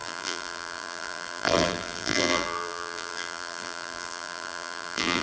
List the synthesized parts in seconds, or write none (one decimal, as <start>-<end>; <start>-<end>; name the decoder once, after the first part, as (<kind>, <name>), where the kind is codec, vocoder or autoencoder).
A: 0.0-5.2 (vocoder, BigVGAN v2)